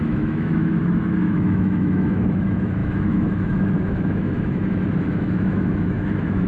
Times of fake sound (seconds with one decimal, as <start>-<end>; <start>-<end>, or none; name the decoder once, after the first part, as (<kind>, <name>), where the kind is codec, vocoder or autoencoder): 0.0-6.5 (autoencoder, DAC-VAE)